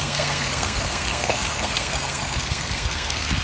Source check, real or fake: fake